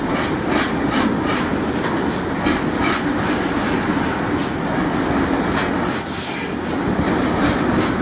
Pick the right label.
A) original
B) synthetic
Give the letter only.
A